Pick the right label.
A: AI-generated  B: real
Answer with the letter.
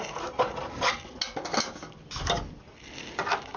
B